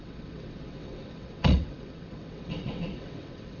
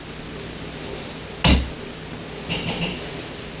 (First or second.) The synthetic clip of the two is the first